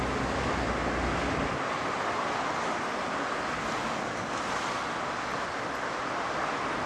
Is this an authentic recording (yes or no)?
yes